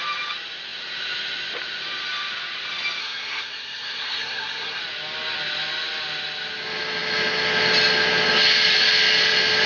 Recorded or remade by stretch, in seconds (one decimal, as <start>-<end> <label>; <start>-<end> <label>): 0.0-3.0 recorded; 3.0-4.8 remade; 4.8-9.7 recorded